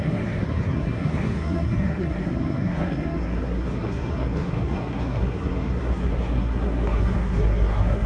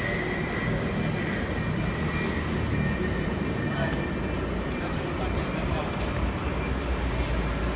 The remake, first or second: first